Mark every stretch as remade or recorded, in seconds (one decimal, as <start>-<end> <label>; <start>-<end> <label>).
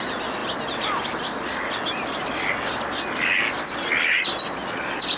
0.0-5.2 recorded